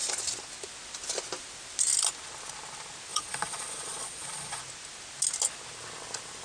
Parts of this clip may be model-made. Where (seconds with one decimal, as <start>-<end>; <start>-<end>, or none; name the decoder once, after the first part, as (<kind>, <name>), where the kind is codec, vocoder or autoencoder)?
3.1-4.6 (vocoder, Vocos)